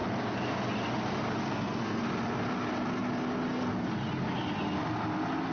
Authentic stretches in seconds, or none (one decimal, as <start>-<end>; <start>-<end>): 0.0-1.5; 2.0-5.5